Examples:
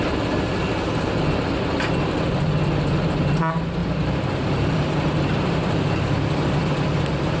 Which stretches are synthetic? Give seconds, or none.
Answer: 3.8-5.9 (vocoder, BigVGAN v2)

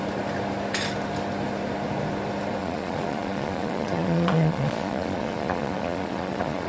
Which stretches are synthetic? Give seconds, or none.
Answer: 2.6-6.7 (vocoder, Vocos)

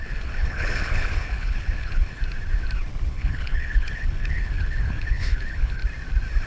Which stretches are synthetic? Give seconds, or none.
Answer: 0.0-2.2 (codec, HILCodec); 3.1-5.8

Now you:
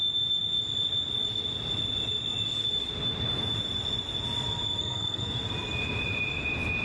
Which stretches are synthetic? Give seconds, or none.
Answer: 4.8-5.4 (codec, SNAC)

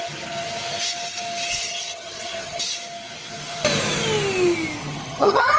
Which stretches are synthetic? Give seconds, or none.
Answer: 1.6-2.6 (vocoder, HiFi-GAN); 4.8-5.6

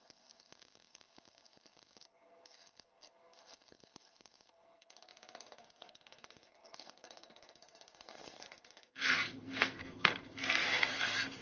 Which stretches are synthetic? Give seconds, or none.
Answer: 0.0-11.4 (codec, SNAC)